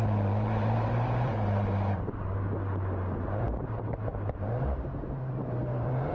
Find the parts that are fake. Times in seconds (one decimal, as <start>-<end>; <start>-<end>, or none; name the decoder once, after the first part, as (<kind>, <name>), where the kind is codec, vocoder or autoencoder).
0.0-2.3 (vocoder, BigVGAN v2); 3.6-6.1